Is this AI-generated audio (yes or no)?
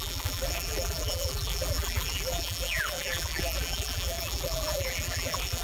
yes